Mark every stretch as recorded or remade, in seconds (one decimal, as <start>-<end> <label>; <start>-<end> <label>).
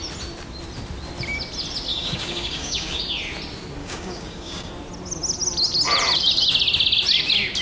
0.0-1.9 recorded; 1.9-3.0 remade; 3.0-3.8 recorded; 3.8-4.7 remade; 4.7-7.6 recorded